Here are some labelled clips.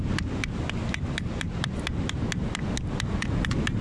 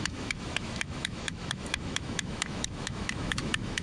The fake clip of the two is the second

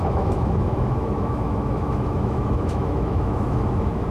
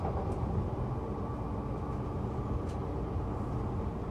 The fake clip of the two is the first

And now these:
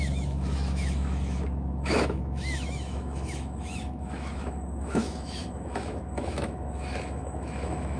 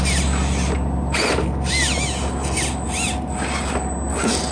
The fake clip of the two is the first